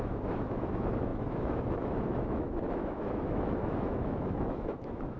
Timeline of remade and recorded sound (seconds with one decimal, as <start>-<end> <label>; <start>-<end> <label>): 0.0-5.2 remade